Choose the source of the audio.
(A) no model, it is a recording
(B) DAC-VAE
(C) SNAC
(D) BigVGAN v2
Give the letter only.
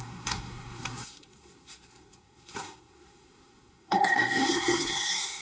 C